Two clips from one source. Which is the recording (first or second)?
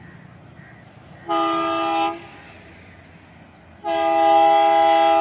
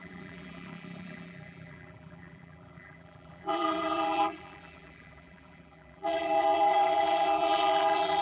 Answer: first